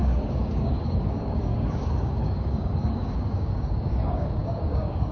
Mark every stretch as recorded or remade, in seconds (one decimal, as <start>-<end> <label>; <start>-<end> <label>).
0.0-5.1 remade